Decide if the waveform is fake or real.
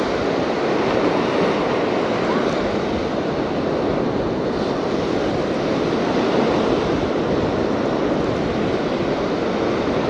real